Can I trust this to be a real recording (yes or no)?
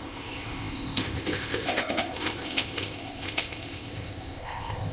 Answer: no